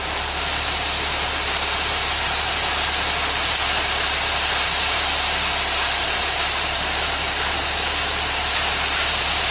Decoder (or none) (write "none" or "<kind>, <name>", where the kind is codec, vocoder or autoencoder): vocoder, BigVGAN v2